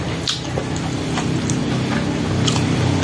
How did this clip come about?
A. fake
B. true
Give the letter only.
B